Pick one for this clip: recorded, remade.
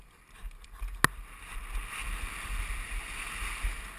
recorded